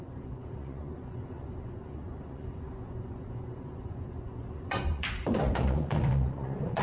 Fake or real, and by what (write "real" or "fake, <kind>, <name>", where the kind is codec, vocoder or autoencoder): fake, vocoder, Vocos